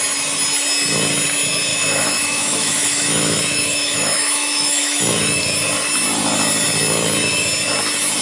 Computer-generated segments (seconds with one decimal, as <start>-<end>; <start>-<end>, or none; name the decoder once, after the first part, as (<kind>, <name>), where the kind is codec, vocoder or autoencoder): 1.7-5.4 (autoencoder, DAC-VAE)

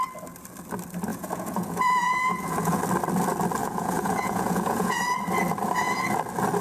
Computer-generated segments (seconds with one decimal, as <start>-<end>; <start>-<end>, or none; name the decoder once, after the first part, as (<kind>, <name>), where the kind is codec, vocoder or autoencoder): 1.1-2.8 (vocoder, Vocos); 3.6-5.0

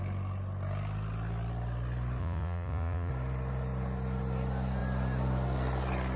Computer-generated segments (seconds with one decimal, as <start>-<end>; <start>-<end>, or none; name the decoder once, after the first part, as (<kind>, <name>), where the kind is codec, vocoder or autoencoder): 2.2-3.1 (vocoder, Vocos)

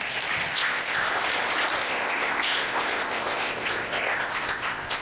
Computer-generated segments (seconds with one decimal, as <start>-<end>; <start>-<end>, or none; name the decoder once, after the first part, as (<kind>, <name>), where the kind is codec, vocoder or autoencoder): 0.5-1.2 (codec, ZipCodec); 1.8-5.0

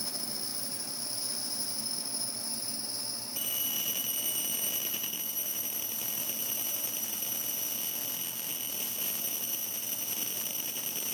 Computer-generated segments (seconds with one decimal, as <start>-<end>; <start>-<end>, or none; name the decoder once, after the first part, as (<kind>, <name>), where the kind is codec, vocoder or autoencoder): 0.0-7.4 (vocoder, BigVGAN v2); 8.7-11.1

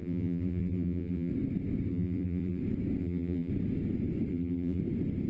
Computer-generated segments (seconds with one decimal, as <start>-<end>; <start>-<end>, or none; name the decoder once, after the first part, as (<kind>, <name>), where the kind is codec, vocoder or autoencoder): 0.0-1.3 (vocoder, BigVGAN v2); 1.9-2.6; 3.0-3.5; 4.3-4.8

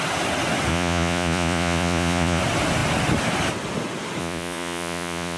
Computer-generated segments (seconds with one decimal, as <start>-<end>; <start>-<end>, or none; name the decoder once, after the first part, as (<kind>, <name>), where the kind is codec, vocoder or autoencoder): 0.7-2.4 (vocoder, Vocos); 4.2-5.4